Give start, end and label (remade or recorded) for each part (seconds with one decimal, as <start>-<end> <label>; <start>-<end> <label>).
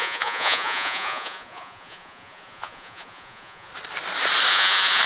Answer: 0.0-3.7 remade; 3.7-4.5 recorded; 4.5-5.1 remade